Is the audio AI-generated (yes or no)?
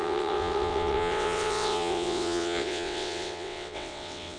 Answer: yes